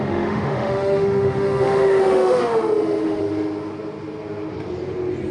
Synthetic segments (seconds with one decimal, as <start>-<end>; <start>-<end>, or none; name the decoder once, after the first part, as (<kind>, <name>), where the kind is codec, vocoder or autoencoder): 0.0-3.2 (autoencoder, DAC-VAE)